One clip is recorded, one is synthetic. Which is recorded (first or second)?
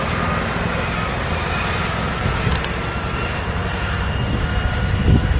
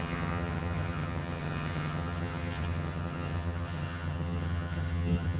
first